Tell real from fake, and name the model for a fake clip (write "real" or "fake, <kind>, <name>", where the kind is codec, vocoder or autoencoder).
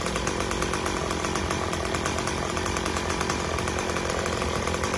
real